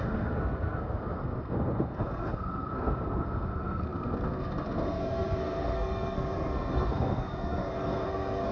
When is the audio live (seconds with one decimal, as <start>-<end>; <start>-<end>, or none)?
none